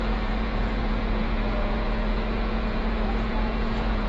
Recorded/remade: remade